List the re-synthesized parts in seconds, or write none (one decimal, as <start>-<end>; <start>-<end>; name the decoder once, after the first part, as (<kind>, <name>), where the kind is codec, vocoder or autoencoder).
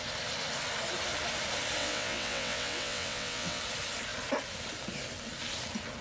1.8-3.6 (vocoder, WaveNeXt)